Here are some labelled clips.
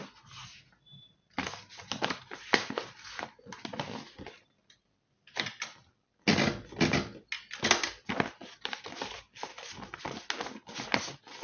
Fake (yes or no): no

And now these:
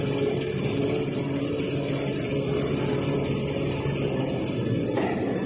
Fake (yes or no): no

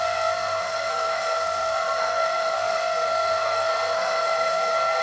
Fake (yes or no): yes